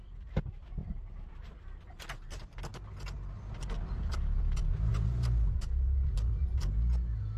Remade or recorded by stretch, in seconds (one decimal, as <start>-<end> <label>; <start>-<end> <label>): 0.0-0.8 recorded; 0.8-1.6 remade; 1.6-7.4 recorded